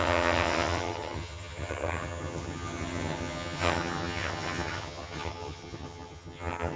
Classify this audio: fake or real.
fake